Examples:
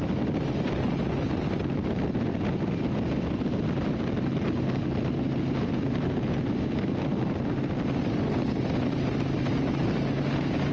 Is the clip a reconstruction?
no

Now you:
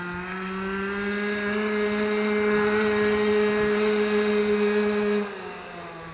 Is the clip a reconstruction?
no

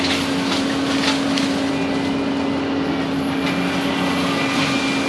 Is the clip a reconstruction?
no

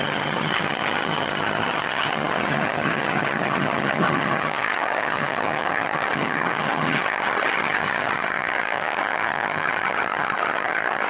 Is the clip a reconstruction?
yes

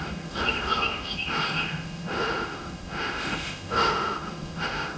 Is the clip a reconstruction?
yes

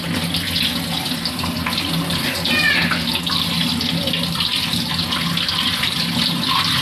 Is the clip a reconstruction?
no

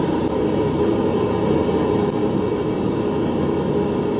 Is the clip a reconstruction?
no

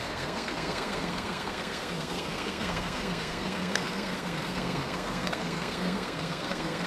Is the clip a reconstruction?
yes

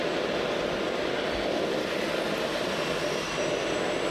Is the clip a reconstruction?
no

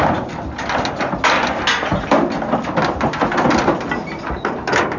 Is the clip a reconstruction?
no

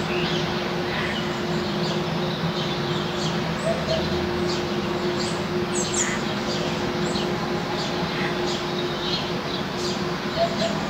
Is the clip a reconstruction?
no